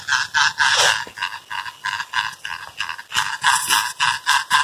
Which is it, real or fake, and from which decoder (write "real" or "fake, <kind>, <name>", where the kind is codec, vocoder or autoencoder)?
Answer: real